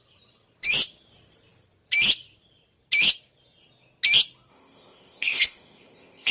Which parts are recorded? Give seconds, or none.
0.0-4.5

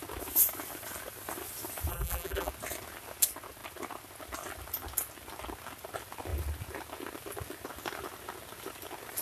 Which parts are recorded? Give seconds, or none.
0.0-1.9; 2.5-9.2

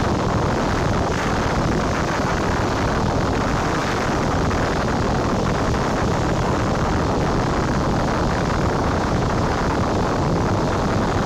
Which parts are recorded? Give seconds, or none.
0.0-8.8; 9.5-11.3

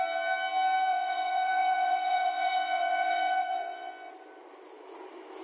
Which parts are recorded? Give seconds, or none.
0.0-0.9; 4.1-5.4

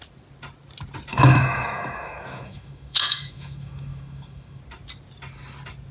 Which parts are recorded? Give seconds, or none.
0.0-1.1; 4.6-5.9

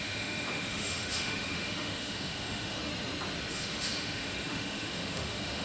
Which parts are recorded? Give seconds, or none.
2.9-3.5

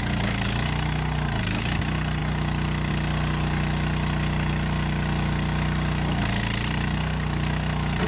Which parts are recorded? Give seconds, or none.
0.0-8.1